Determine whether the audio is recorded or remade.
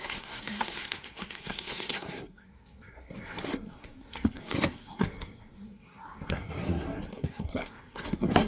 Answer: remade